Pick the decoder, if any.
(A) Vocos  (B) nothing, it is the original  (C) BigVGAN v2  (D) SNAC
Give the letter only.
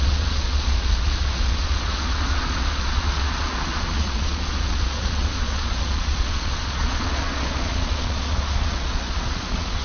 A